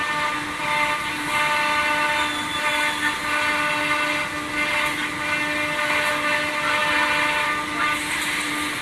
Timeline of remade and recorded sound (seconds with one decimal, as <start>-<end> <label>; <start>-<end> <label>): 0.0-2.7 remade; 2.7-6.1 recorded; 6.1-8.8 remade